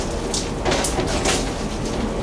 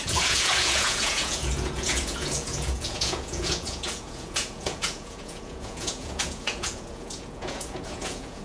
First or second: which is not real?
second